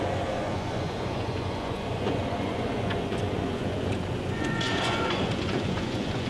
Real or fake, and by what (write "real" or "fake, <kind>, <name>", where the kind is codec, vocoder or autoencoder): fake, vocoder, Vocos